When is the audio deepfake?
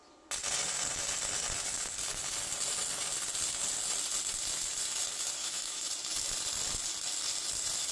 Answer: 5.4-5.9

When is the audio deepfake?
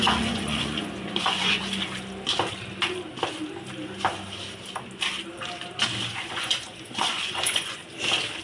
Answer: 0.0-1.6; 6.2-7.8